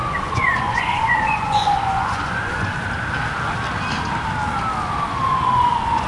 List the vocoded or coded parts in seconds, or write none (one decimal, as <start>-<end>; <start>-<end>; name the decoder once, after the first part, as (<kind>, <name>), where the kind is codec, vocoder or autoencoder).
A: 0.0-2.7 (vocoder, Vocos); 5.1-6.1